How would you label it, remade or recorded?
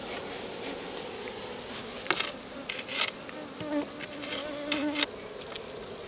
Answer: recorded